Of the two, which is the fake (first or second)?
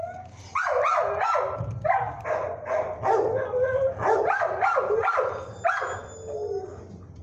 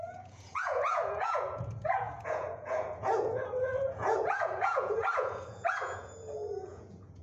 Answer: second